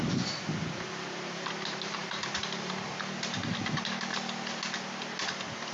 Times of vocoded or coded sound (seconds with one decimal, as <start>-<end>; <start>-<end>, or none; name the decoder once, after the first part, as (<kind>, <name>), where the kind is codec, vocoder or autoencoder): 2.0-2.9 (vocoder, BigVGAN v2); 4.1-4.6